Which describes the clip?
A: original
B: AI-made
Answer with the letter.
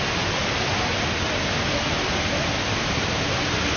A